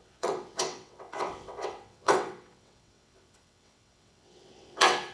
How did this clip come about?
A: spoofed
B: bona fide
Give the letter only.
A